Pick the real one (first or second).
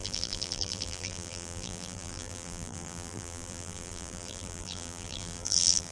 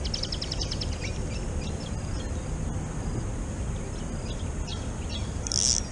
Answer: second